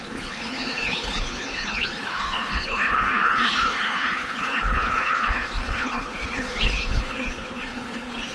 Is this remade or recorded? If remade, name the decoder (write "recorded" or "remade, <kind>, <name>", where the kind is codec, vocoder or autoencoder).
remade, codec, HILCodec